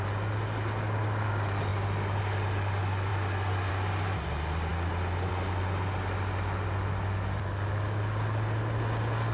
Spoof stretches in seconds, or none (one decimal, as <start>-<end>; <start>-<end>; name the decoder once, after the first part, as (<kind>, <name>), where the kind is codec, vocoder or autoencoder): none